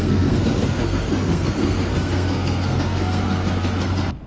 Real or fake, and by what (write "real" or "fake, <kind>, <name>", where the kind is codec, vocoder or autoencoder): fake, codec, SNAC